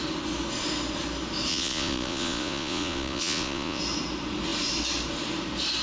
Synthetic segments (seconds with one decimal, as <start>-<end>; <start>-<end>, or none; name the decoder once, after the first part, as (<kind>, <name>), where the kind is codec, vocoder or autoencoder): 1.5-3.8 (vocoder, Vocos)